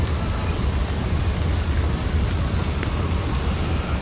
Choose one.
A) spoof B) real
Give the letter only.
B